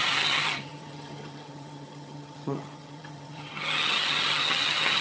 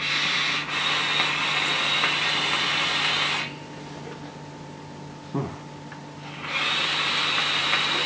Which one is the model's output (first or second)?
first